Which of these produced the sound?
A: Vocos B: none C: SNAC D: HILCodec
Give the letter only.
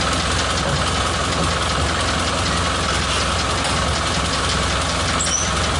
B